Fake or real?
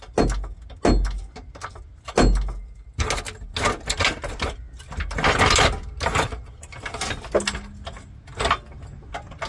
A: real